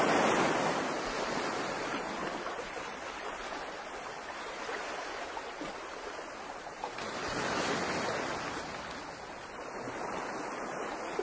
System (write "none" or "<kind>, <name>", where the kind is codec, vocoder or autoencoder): none